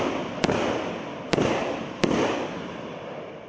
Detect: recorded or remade recorded